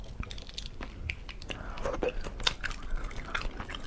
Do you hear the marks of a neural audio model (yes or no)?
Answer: no